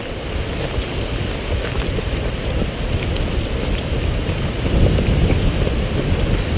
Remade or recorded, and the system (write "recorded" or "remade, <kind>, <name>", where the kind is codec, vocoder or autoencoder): recorded